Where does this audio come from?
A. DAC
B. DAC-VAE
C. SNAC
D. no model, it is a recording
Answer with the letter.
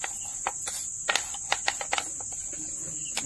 D